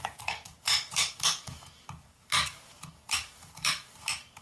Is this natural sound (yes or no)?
no